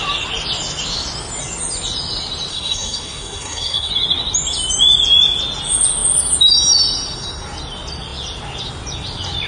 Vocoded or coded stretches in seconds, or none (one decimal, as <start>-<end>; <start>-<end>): 2.5-3.9

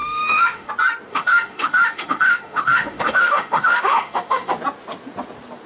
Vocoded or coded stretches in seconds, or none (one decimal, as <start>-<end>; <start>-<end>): 0.0-0.7; 1.1-4.5

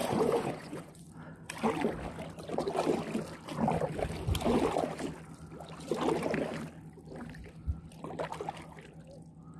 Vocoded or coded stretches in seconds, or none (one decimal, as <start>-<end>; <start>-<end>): 0.0-1.1

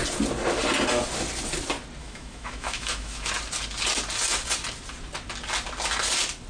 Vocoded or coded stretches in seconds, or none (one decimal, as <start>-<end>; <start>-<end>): 2.0-3.3

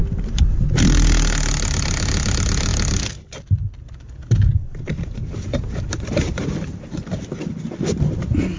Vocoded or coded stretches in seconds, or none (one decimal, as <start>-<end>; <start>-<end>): 0.7-8.6

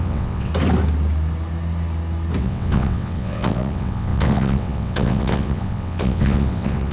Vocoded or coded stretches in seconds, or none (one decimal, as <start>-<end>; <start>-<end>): 0.0-0.5; 2.4-6.9

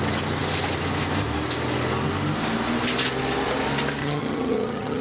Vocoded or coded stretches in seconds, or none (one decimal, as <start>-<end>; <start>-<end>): 4.0-5.0

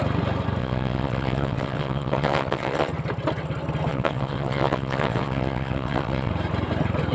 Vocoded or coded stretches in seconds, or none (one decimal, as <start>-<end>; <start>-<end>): 0.6-2.9; 3.9-6.3